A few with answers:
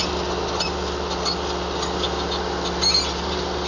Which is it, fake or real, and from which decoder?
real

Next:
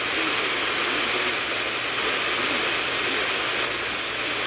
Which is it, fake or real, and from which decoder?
real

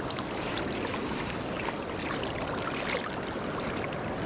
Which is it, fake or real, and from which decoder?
real